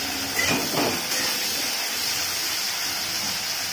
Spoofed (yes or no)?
no